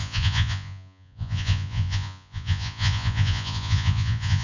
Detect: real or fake fake